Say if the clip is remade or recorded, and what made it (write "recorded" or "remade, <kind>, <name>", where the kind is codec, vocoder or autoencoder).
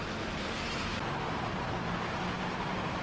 recorded